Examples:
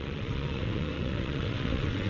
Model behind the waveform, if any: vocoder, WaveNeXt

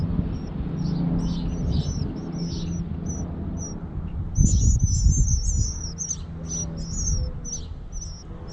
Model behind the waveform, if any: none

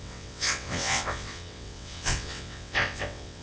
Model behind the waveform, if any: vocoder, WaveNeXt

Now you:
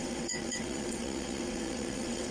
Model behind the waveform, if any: vocoder, WaveNeXt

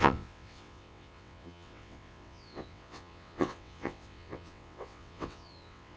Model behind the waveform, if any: vocoder, WaveNeXt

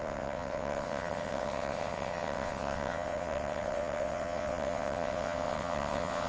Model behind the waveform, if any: vocoder, WaveNeXt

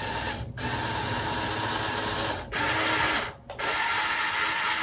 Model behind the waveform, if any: none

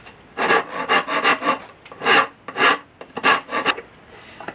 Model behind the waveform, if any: none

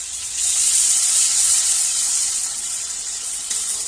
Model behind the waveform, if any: vocoder, WaveNeXt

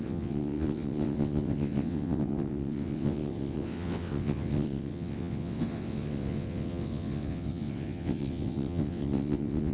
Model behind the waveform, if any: vocoder, WaveNeXt